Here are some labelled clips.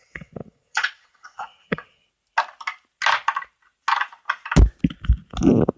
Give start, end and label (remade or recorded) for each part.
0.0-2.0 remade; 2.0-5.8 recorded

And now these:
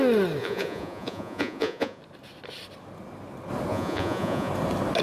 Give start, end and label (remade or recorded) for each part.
0.0-0.4 recorded; 0.4-2.0 remade; 2.0-3.7 recorded; 3.7-4.5 remade; 4.5-5.0 recorded

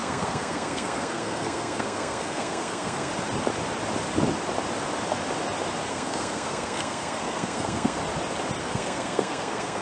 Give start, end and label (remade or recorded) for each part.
0.0-3.1 remade; 3.1-5.9 recorded; 5.9-8.0 remade; 8.0-8.6 recorded; 8.6-9.8 remade